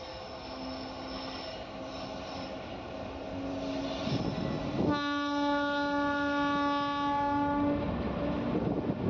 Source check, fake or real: real